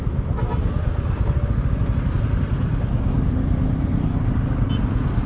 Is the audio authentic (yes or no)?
yes